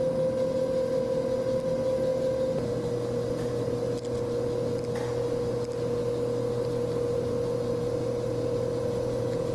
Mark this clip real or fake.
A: real